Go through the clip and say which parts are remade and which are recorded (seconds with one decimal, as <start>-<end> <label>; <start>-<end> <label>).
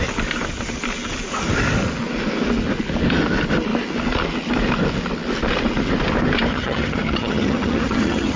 0.0-6.5 recorded; 6.5-8.4 remade